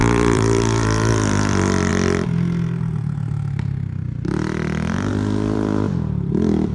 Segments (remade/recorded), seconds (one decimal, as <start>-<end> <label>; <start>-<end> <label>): 0.0-1.9 remade; 1.9-5.1 recorded; 5.1-6.7 remade